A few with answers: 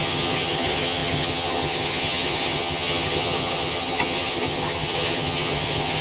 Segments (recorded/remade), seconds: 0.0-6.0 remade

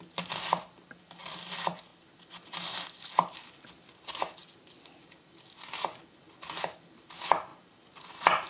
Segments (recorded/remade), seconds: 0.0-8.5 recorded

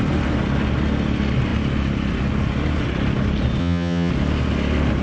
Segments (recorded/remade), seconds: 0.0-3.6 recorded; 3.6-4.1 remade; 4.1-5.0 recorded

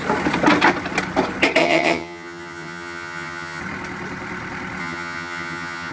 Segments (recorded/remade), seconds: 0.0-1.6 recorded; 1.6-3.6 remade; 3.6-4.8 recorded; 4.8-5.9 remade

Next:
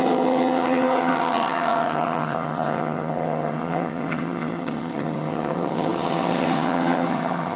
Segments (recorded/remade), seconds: 0.0-7.6 remade

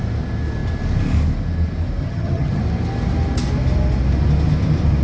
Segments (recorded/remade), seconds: 0.0-2.0 recorded; 2.0-2.6 remade; 2.6-5.0 recorded